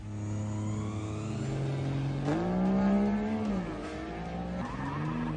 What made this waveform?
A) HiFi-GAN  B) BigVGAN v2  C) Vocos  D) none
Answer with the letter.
D